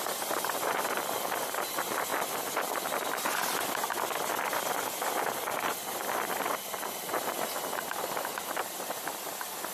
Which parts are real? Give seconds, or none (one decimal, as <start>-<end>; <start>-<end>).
0.0-9.7